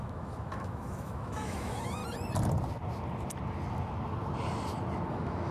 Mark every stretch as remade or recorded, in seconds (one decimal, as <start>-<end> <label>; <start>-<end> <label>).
0.0-2.0 remade; 2.0-5.1 recorded; 5.1-5.5 remade